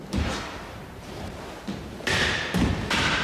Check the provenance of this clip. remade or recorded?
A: remade